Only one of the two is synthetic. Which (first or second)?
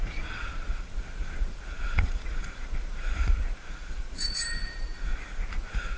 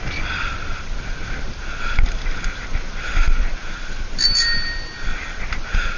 first